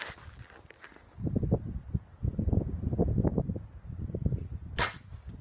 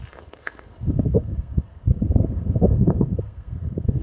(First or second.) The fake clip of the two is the second